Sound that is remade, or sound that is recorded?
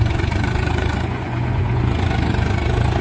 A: remade